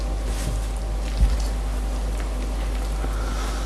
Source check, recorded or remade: recorded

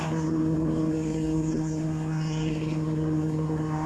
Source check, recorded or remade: remade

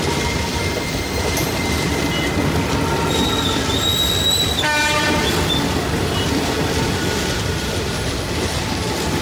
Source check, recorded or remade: recorded